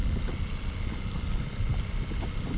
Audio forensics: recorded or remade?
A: recorded